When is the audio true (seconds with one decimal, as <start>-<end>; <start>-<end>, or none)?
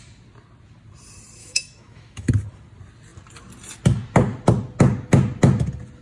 0.0-1.4; 2.3-6.0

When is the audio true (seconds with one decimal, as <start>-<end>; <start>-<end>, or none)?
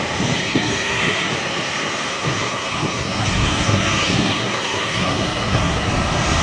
0.0-0.4; 1.3-2.1; 5.9-6.4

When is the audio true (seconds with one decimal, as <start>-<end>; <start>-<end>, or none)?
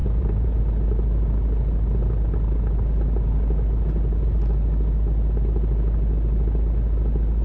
0.6-7.4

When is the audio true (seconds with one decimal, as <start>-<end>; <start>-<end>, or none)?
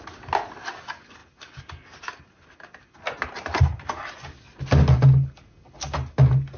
0.0-6.6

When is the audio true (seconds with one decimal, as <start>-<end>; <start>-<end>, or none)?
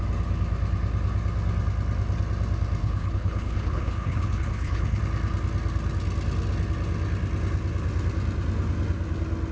0.0-2.8; 5.0-9.5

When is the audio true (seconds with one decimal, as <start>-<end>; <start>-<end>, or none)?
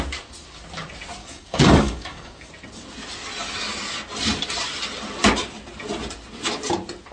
0.0-1.2; 2.5-7.1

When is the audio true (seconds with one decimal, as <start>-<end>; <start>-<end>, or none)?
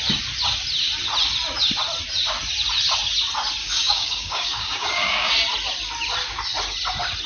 0.0-3.6; 5.3-7.3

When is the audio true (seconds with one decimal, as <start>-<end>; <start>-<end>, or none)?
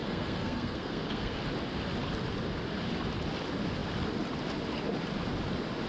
1.4-5.9